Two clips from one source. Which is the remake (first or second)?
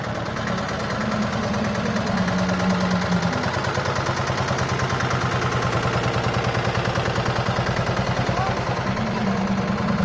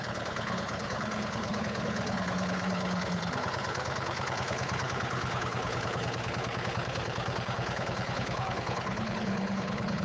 second